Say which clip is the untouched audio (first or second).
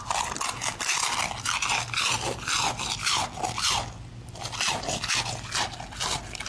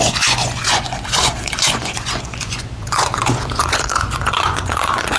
first